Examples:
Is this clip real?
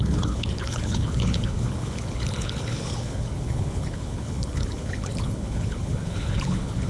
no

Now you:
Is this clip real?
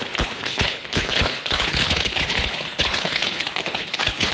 no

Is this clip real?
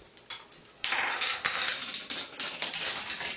yes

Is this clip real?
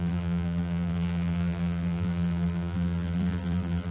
no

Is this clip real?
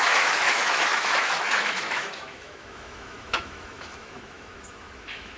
no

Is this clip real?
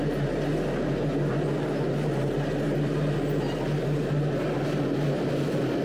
yes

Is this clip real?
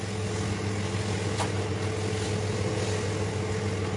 yes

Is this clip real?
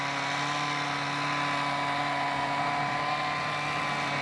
yes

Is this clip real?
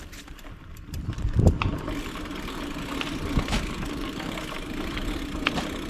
no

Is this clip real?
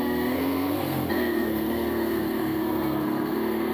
no